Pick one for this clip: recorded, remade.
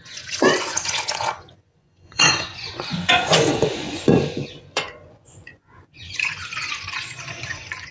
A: remade